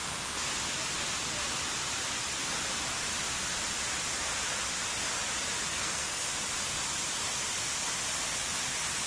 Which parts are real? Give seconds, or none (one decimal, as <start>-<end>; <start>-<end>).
0.0-5.7; 6.3-9.1